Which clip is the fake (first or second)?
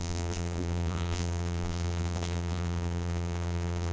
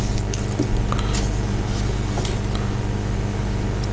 first